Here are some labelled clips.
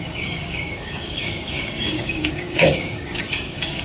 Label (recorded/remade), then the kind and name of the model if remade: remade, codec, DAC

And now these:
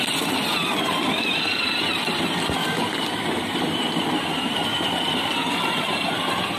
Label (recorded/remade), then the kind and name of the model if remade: remade, vocoder, BigVGAN v2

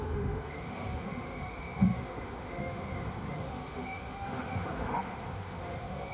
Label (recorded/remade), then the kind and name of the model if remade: remade, autoencoder, DAC-VAE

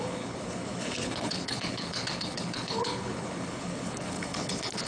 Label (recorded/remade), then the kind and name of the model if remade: remade, codec, HILCodec